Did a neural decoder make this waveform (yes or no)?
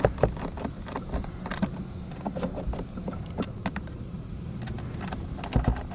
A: no